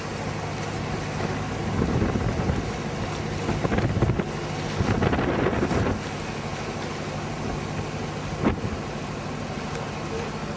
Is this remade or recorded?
recorded